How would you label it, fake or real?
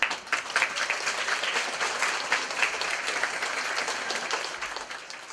real